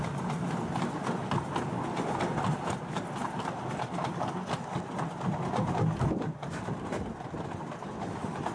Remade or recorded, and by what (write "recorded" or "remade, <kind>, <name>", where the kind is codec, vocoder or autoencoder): recorded